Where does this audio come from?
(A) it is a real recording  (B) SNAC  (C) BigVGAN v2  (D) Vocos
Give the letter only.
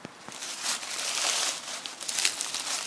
A